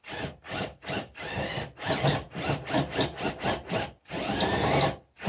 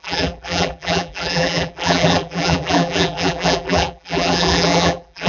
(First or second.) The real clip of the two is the first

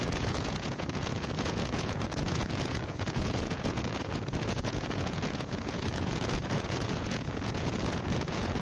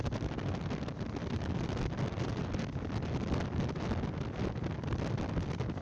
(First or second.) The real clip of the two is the second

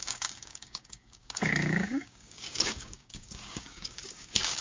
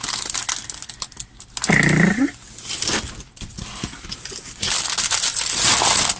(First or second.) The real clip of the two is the second